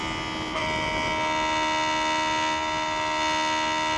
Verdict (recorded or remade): recorded